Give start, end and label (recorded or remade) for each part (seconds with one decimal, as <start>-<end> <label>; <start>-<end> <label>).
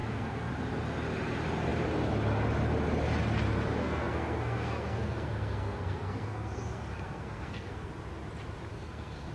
0.0-0.5 remade; 0.5-3.8 recorded; 3.8-7.9 remade; 7.9-8.7 recorded; 8.7-9.3 remade